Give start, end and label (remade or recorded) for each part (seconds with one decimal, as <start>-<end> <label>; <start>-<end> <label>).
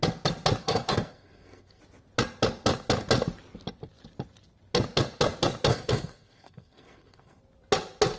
0.0-0.6 recorded; 0.6-1.8 remade; 1.8-5.7 recorded; 5.7-7.4 remade; 7.4-8.2 recorded